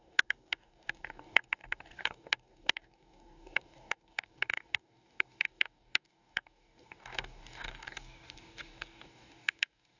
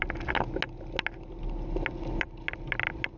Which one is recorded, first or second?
second